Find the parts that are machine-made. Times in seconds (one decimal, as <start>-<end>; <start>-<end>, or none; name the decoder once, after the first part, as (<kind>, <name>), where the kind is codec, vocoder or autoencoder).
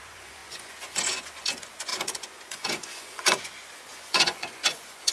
0.0-5.1 (vocoder, Vocos)